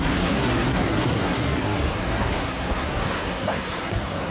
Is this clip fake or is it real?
fake